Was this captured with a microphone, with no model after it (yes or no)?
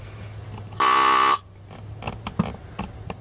yes